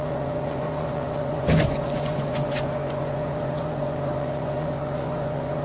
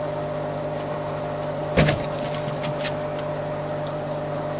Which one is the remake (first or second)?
first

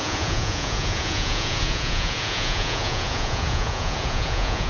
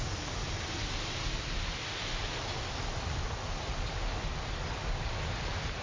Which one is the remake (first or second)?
first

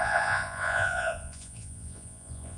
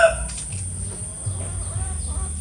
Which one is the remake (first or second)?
first